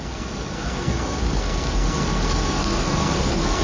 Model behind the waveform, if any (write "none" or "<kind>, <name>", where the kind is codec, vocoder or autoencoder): codec, SNAC